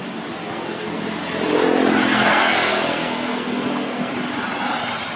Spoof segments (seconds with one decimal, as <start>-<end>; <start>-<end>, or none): 0.4-1.0; 2.0-4.1